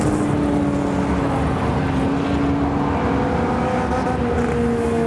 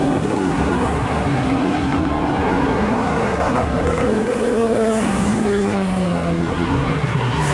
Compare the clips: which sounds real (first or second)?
first